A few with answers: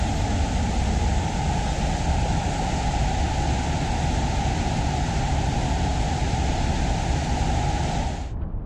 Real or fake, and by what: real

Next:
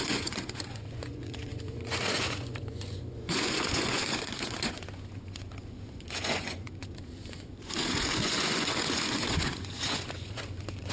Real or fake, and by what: fake, vocoder, Vocos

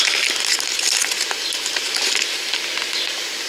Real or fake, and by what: real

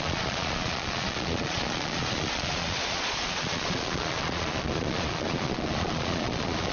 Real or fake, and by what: fake, vocoder, Vocos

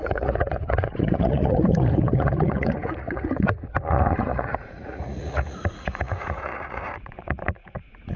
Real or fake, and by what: fake, vocoder, Vocos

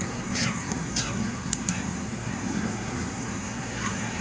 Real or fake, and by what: fake, codec, SNAC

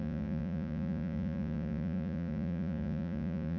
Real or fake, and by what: fake, vocoder, Vocos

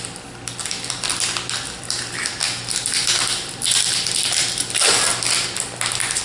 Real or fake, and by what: real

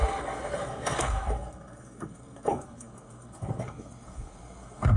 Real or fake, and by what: fake, codec, SNAC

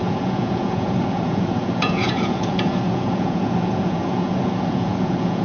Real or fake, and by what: fake, vocoder, Vocos